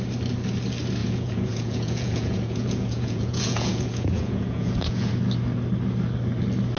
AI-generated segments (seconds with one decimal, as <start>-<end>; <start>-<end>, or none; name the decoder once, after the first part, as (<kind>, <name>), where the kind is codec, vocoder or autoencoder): 1.0-5.1 (vocoder, Vocos)

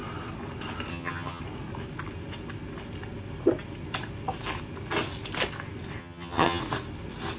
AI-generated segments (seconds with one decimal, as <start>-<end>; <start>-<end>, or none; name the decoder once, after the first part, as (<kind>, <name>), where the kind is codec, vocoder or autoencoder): 0.9-1.4 (vocoder, HiFi-GAN); 6.0-6.6

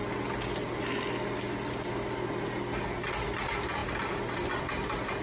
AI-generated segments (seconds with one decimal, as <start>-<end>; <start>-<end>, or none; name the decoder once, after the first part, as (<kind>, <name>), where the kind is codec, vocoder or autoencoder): none

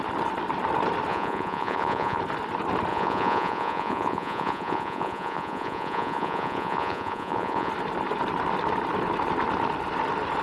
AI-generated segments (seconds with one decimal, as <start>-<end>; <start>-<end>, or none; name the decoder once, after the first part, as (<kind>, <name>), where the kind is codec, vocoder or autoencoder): 1.1-2.2 (vocoder, Vocos); 2.9-7.7

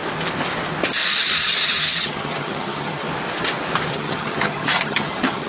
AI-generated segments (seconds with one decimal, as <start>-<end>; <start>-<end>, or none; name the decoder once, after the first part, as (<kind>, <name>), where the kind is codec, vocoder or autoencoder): 1.1-3.1 (vocoder, HiFi-GAN); 3.9-5.5

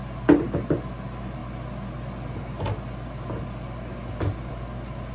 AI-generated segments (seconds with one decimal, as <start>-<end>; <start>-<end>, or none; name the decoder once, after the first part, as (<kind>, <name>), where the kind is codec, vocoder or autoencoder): none

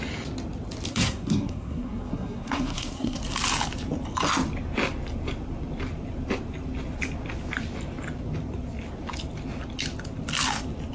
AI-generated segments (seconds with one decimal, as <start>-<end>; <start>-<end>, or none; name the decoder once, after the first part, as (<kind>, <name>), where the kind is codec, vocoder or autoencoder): 0.9-3.2 (codec, SNAC)